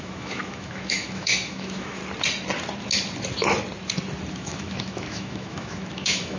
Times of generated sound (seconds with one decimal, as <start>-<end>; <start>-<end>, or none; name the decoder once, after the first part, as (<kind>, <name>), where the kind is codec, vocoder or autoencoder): 0.0-2.0 (autoencoder, DAC-VAE); 4.3-6.4